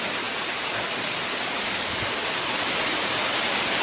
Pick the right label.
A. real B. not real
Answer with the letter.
A